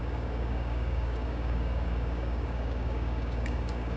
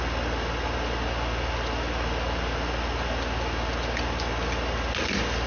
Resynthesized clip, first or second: first